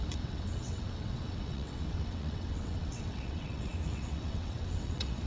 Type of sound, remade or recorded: remade